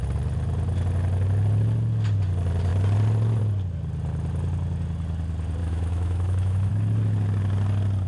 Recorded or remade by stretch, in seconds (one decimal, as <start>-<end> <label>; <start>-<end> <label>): 0.0-5.6 recorded; 5.6-6.7 remade; 6.7-8.1 recorded